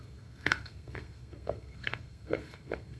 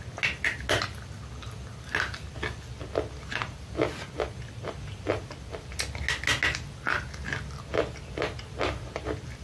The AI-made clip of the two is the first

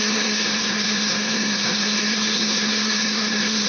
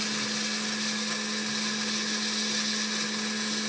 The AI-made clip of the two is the first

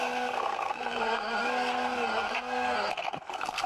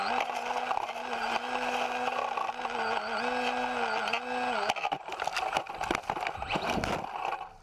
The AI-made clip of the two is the first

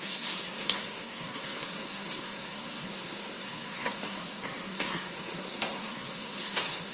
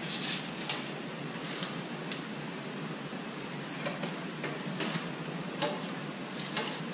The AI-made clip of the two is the first